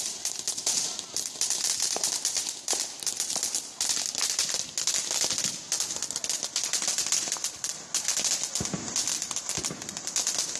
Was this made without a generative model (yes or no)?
yes